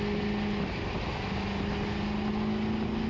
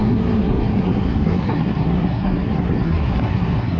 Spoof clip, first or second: second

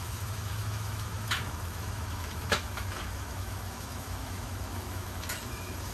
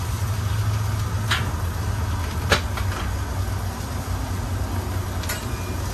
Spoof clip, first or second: first